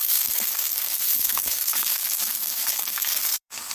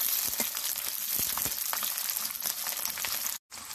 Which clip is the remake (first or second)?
first